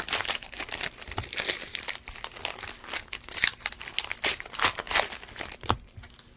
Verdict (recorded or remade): recorded